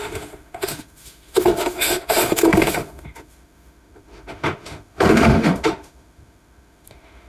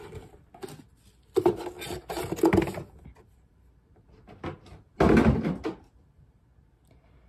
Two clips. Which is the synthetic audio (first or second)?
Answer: first